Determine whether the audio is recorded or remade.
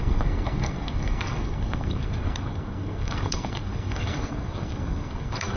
remade